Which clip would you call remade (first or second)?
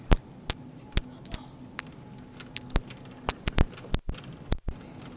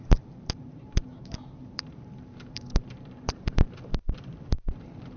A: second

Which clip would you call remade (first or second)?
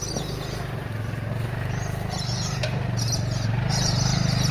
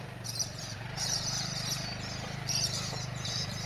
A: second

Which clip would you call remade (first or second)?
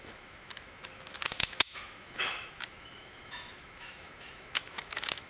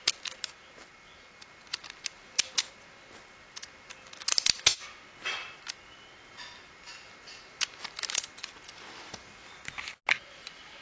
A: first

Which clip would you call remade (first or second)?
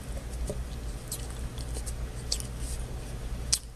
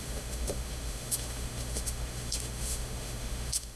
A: second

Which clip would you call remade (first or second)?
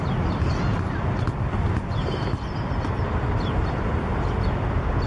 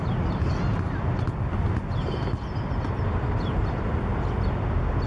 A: first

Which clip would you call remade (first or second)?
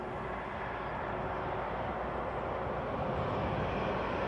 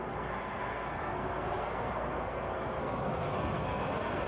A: second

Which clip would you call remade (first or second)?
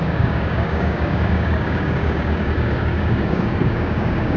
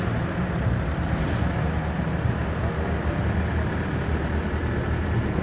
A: first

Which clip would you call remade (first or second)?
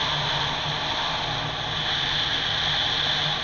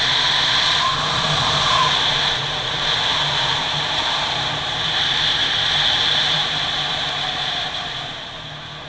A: second